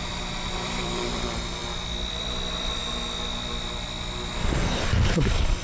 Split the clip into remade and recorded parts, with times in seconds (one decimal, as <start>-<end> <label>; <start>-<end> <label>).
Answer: 0.0-2.8 remade; 2.8-4.5 recorded; 4.5-5.6 remade